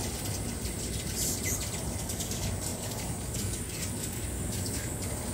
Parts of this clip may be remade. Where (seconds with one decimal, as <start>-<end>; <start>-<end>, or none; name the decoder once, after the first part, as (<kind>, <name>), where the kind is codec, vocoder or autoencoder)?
2.0-5.3 (codec, DAC)